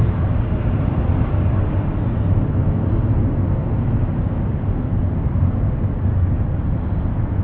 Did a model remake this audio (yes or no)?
no